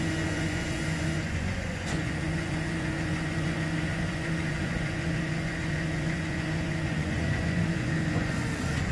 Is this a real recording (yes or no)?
no